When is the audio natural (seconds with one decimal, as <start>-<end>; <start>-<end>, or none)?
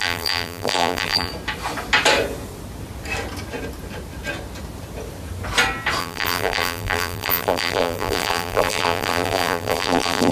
1.3-6.0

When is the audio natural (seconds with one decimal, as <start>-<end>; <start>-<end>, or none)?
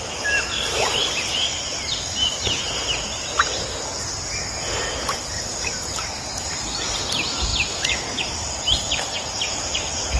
0.0-10.2